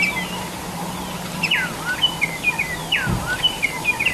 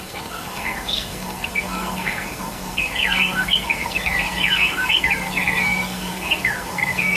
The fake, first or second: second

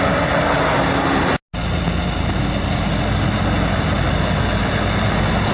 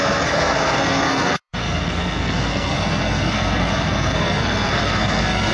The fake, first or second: second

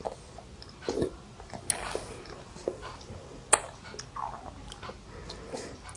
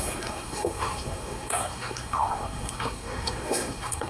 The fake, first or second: second